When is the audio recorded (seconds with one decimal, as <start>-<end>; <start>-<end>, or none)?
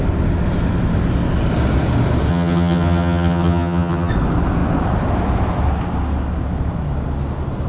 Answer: 0.0-2.3; 4.1-7.7